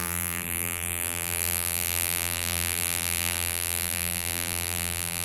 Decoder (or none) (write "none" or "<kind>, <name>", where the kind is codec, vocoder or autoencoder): vocoder, BigVGAN v2